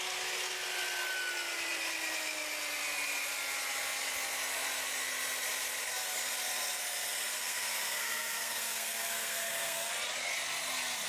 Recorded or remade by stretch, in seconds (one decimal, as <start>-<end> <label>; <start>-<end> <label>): 0.0-7.3 recorded; 7.3-9.9 remade; 9.9-11.1 recorded